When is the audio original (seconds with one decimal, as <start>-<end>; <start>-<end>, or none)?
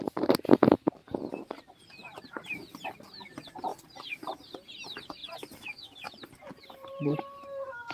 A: 1.0-1.8; 5.2-6.3